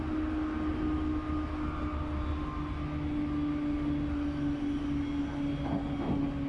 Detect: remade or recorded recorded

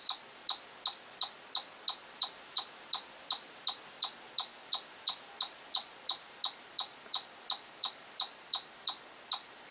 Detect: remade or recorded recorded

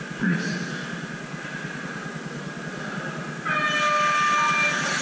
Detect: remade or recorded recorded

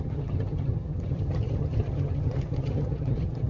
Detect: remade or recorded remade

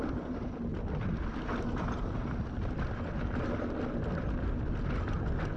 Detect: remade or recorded recorded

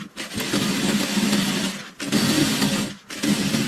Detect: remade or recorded recorded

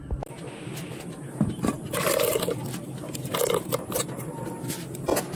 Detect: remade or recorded recorded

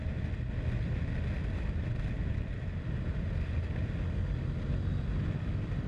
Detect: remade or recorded recorded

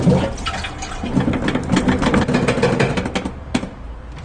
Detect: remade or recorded recorded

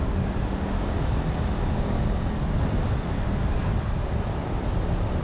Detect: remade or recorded recorded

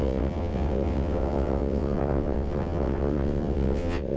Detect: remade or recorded remade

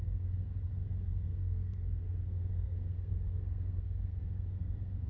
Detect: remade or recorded remade